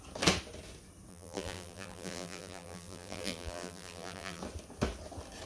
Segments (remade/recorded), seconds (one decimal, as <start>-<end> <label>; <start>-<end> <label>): 0.0-1.1 recorded; 1.1-4.4 remade; 4.4-5.5 recorded